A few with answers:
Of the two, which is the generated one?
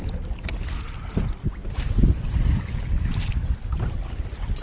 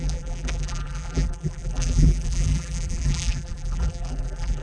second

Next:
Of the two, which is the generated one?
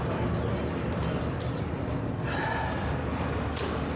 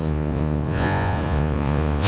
second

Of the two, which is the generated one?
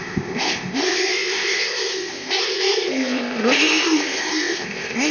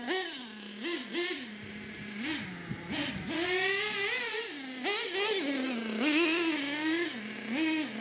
first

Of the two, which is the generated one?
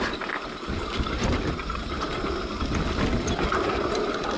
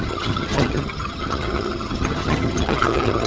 second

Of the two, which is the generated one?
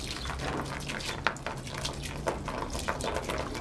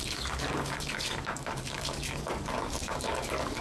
second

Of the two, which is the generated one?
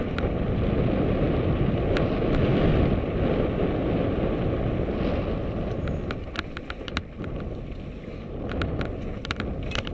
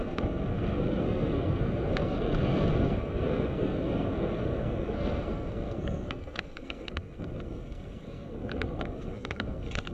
second